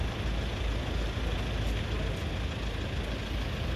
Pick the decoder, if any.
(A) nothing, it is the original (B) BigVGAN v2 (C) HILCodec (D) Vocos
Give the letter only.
A